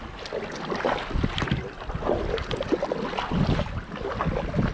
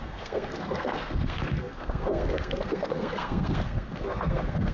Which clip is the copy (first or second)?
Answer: second